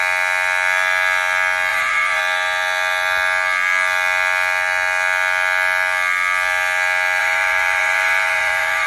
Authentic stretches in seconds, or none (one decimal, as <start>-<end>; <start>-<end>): 0.0-1.7; 2.2-7.2